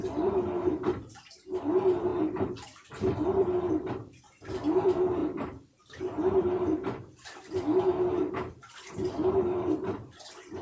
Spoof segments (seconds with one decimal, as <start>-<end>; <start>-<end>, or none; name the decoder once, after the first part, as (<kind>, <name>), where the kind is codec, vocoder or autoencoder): 0.0-10.6 (vocoder, BigVGAN v2)